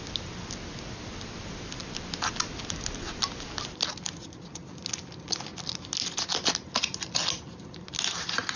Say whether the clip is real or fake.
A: real